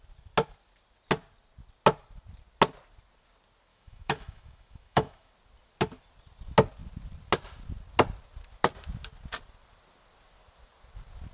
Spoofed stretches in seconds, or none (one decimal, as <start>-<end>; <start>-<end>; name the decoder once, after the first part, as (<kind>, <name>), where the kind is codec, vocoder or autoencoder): 3.7-5.3 (autoencoder, DAC-VAE)

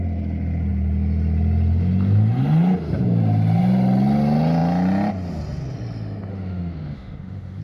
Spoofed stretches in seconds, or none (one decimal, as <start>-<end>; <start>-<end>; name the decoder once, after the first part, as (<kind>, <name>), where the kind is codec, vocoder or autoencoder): 6.3-7.6 (autoencoder, DAC-VAE)

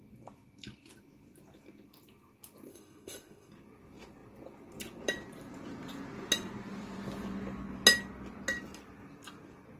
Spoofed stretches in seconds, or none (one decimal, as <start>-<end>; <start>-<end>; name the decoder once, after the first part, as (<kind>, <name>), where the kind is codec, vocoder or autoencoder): 2.7-3.5 (autoencoder, DAC-VAE)

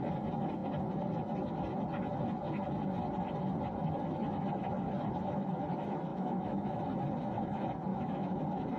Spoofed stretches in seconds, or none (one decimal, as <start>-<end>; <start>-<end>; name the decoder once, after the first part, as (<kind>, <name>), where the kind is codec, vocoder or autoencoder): 6.1-6.8 (autoencoder, DAC-VAE); 7.9-8.4